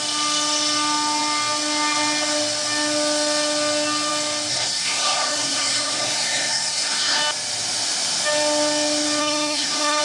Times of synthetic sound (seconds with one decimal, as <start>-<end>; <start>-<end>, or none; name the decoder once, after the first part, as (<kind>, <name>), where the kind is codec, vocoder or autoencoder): 4.5-7.2 (codec, SNAC); 9.2-10.0